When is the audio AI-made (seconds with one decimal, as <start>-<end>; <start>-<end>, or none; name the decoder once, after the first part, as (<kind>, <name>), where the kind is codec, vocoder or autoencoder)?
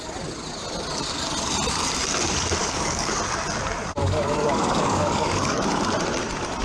2.6-3.2 (codec, DAC); 4.0-5.6